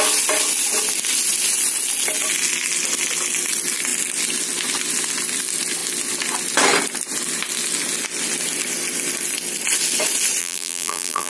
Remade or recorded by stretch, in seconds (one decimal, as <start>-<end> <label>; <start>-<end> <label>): 0.0-10.4 recorded; 10.4-11.3 remade